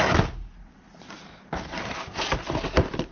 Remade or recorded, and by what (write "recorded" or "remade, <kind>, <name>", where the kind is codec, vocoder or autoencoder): recorded